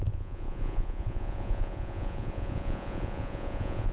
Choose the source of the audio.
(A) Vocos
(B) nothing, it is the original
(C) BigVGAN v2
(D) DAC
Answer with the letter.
A